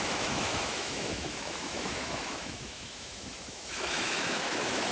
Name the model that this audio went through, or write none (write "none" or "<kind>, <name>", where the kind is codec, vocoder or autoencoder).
autoencoder, DAC-VAE